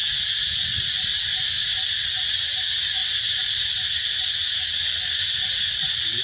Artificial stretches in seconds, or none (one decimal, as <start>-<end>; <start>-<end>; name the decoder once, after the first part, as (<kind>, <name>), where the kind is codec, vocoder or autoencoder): none